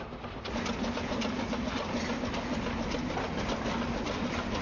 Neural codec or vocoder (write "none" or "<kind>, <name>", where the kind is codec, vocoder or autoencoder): none